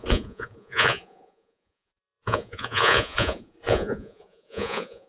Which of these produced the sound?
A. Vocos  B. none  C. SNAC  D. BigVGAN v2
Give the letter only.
A